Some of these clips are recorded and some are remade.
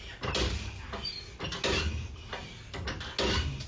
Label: recorded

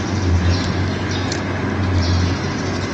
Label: recorded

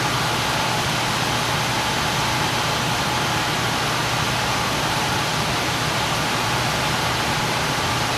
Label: recorded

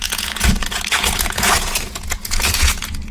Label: remade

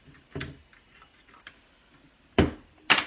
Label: recorded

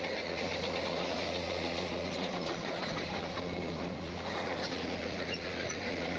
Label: remade